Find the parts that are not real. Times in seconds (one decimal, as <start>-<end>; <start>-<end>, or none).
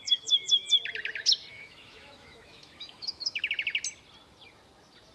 0.0-0.7; 1.5-3.5